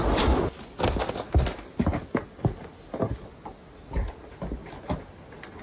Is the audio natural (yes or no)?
yes